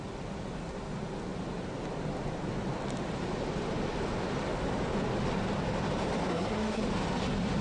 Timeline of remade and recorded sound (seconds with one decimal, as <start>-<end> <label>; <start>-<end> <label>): 0.0-6.3 recorded; 6.3-6.8 remade; 6.8-7.6 recorded